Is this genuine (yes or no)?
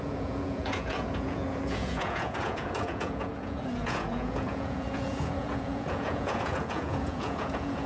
no